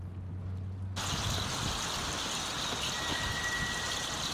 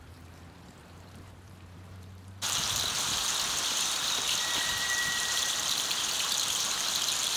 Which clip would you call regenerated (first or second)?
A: second